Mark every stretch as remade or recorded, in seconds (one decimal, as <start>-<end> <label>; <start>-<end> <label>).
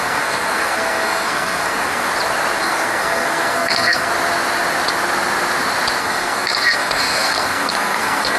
0.0-2.1 remade; 2.1-2.6 recorded; 2.6-4.1 remade; 4.1-6.0 recorded; 6.0-8.4 remade